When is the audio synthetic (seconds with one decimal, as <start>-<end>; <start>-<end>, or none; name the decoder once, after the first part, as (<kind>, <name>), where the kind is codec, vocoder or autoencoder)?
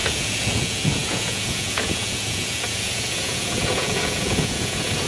0.0-5.1 (vocoder, Vocos)